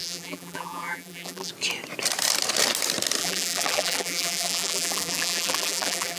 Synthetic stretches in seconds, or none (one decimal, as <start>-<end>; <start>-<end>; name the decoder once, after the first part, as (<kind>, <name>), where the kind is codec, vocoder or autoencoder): 0.0-1.5 (vocoder, BigVGAN v2); 3.2-6.2